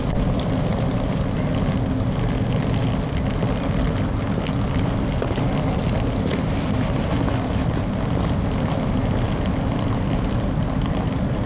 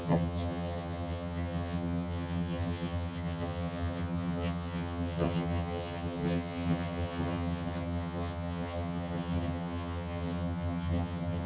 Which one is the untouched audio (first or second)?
first